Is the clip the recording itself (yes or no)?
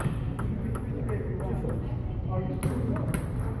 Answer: yes